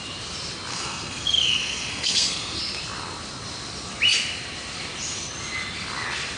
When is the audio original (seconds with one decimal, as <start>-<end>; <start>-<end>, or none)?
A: 0.0-0.7; 2.6-6.4